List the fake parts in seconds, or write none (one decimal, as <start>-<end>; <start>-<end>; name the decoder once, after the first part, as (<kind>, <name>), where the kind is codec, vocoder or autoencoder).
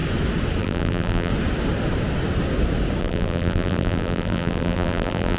0.6-1.3 (vocoder, BigVGAN v2); 3.0-5.4